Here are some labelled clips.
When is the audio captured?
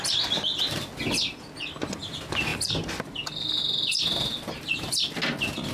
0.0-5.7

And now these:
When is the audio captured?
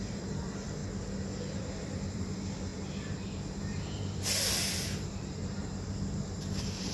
0.8-1.7; 2.7-3.6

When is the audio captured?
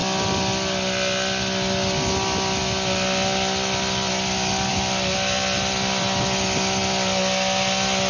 0.0-8.1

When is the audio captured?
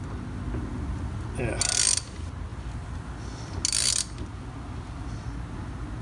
0.0-6.0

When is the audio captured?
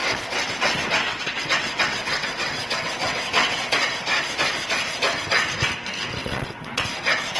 4.4-6.2; 6.9-7.4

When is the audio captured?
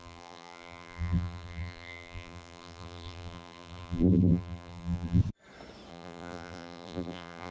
5.2-5.9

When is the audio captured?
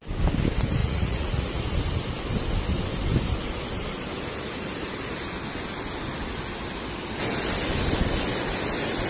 0.0-0.8; 1.6-9.1